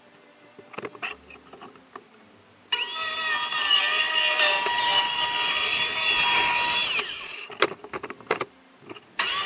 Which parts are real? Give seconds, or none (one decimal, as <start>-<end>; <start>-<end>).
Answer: 0.0-9.5